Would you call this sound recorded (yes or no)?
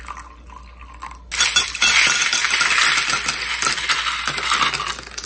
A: yes